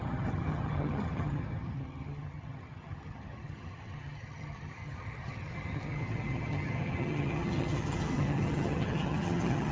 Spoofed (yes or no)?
yes